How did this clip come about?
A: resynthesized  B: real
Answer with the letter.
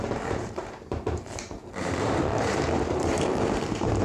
A